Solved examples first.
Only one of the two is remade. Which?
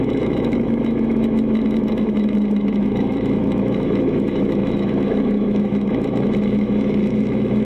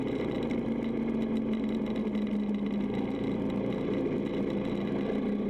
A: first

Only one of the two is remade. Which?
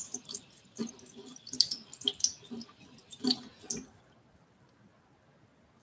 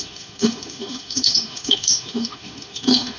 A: second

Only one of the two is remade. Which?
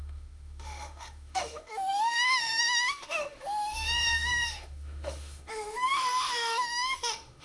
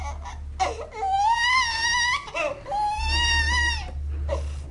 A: first